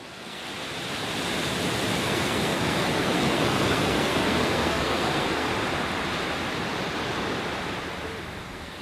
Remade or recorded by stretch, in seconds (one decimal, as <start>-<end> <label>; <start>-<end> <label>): 0.0-0.4 remade; 0.4-2.0 recorded; 2.0-5.5 remade; 5.5-8.4 recorded; 8.4-8.8 remade